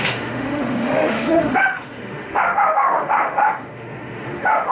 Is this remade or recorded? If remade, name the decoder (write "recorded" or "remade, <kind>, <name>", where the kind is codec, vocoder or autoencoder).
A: remade, autoencoder, DAC-VAE